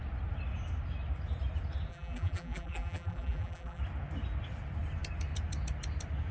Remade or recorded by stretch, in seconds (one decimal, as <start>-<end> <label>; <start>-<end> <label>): 0.0-1.9 recorded; 1.9-3.8 remade; 3.8-6.3 recorded